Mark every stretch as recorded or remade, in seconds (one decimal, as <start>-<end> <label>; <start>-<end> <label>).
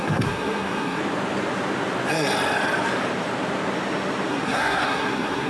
0.0-1.0 remade; 1.0-4.3 recorded; 4.3-5.5 remade